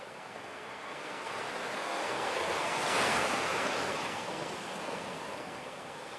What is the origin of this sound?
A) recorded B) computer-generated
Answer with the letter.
B